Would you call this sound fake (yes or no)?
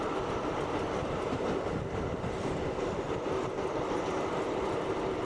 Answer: no